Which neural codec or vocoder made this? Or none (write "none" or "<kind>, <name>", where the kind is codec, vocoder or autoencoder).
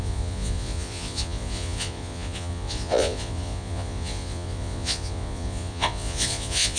vocoder, Vocos